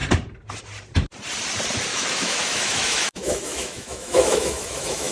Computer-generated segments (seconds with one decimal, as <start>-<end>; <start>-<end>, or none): 1.9-5.1